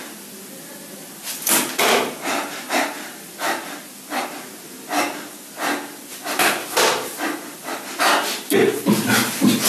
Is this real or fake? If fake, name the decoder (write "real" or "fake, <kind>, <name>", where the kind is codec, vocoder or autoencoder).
real